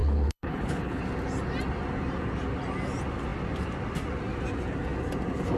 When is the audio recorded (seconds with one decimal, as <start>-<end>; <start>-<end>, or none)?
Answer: 1.0-5.6